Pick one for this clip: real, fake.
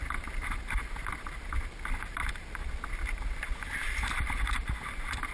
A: real